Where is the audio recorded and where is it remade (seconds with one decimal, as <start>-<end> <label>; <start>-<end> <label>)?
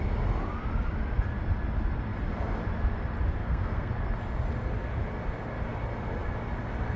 0.0-3.4 recorded; 3.4-3.9 remade; 3.9-7.0 recorded